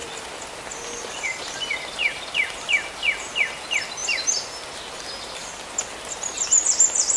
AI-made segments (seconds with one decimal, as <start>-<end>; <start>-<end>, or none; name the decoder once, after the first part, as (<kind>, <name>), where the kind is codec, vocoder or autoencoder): none

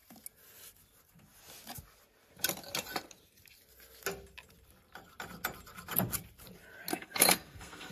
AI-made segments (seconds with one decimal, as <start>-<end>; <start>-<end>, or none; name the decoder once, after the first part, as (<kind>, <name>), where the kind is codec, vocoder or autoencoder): 6.9-7.9 (codec, SNAC)

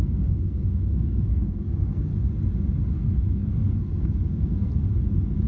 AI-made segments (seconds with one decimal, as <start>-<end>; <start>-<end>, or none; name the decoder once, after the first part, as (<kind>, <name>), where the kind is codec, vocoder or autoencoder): 0.0-2.1 (codec, SNAC); 2.9-4.7

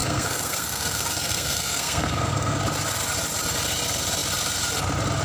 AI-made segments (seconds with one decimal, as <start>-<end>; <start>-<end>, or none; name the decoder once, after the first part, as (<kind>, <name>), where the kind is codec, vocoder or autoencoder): 0.0-2.6 (codec, SNAC)

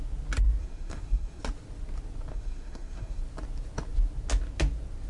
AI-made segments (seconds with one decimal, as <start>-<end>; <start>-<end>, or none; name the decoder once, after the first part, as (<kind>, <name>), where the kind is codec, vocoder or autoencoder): 0.6-1.4 (codec, SNAC); 2.3-3.2